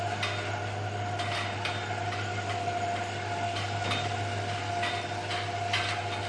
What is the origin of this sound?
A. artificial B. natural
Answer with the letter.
B